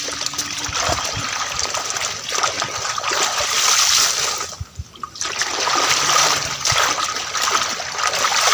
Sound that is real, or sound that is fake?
real